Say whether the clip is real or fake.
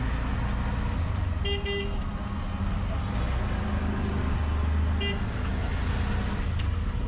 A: real